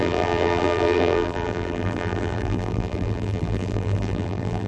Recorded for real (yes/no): no